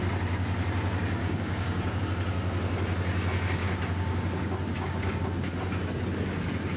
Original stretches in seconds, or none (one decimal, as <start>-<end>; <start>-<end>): 0.0-1.2; 2.0-3.6; 5.2-6.8